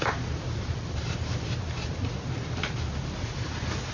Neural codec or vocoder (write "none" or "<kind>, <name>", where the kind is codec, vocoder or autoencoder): none